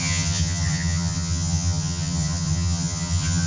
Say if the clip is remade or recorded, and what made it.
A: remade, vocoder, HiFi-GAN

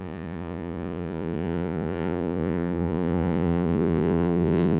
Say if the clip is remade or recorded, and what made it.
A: remade, vocoder, Vocos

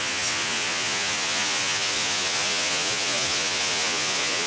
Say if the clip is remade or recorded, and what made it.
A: remade, vocoder, Vocos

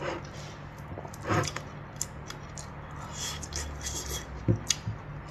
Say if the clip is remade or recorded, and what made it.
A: recorded